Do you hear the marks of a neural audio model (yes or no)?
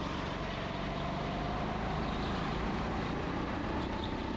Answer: no